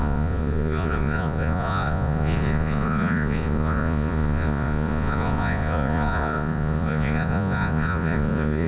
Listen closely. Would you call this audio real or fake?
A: fake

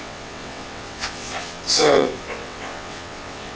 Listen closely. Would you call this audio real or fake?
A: fake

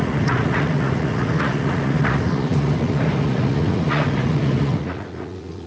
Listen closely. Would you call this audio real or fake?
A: fake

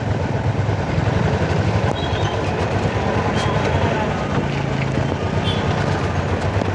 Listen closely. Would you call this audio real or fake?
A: real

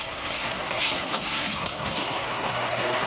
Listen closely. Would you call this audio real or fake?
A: fake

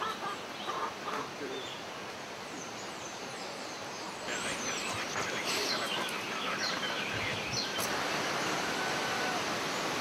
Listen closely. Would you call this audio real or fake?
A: fake